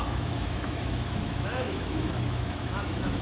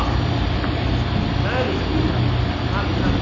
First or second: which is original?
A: second